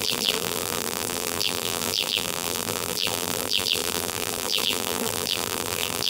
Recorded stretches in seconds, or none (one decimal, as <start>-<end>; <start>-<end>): none